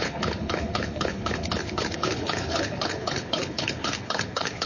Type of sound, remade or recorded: remade